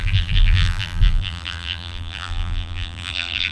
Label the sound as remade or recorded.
remade